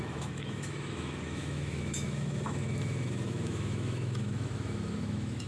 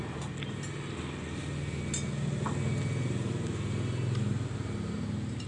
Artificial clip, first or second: first